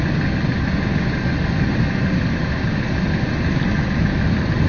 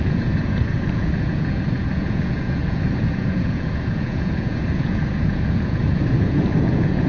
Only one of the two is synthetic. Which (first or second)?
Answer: second